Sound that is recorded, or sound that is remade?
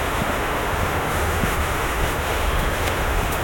remade